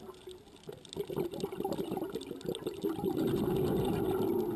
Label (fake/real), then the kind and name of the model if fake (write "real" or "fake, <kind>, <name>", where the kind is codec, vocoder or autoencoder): real